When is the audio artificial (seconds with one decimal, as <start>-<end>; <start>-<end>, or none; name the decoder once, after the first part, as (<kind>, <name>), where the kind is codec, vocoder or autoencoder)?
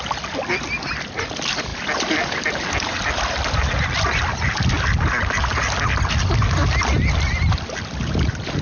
none